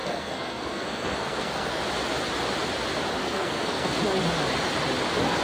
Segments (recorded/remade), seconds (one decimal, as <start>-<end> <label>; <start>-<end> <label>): 0.0-1.8 remade; 1.8-3.2 recorded; 3.2-4.0 remade; 4.0-5.4 recorded